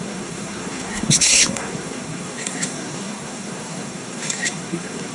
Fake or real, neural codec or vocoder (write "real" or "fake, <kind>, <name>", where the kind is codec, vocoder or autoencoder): fake, codec, SNAC